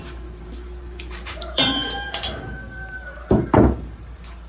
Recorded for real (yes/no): no